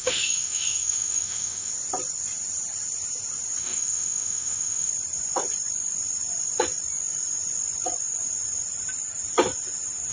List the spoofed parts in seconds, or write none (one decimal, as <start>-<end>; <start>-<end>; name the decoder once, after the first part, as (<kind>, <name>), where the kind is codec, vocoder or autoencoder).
0.0-1.7 (autoencoder, DAC-VAE); 3.6-4.9